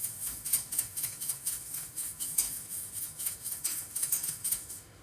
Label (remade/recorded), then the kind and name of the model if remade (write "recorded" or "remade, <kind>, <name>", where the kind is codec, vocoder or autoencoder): remade, autoencoder, DAC-VAE